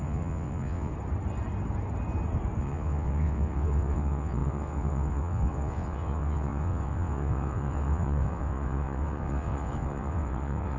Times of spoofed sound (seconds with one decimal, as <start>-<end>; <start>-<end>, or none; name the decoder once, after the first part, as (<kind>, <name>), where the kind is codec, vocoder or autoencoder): 0.0-0.9 (vocoder, WaveNeXt); 2.6-10.8